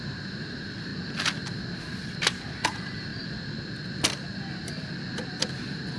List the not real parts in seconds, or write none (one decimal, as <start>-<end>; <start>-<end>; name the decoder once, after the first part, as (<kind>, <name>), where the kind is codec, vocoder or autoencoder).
0.0-0.9 (vocoder, BigVGAN v2); 1.8-3.1